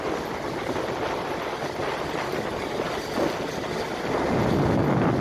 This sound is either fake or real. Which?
real